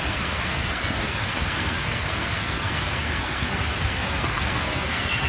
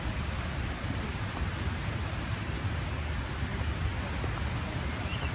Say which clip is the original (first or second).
second